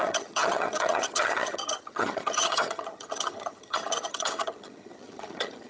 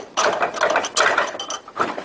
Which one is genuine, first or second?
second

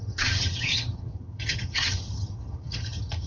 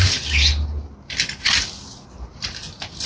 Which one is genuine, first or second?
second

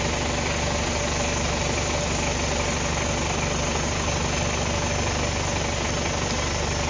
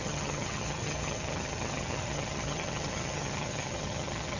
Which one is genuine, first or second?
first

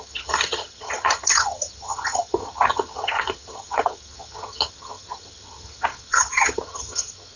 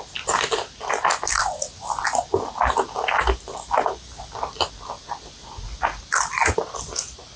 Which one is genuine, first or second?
second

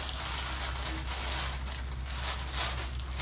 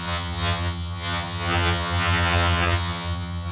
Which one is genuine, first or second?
first